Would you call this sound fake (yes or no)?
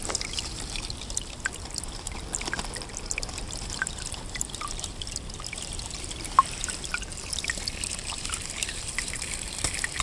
yes